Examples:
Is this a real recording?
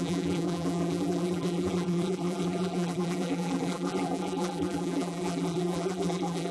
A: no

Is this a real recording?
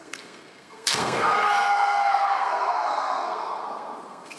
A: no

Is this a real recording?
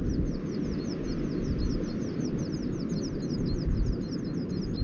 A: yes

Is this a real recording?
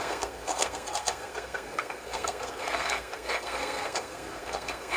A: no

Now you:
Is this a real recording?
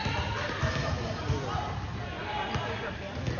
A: yes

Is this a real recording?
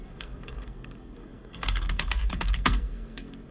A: no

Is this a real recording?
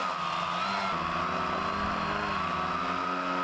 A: yes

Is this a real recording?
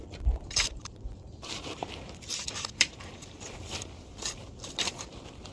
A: no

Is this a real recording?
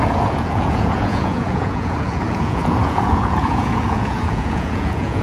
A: no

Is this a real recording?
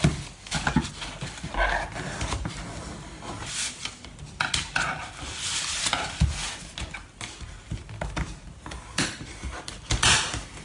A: yes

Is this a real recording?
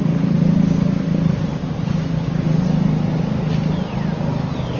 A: yes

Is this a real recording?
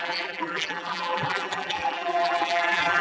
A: no